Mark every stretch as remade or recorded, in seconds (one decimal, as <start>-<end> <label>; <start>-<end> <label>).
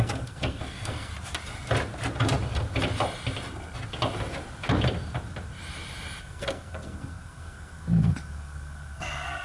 0.0-1.1 remade; 1.1-6.2 recorded; 6.2-9.4 remade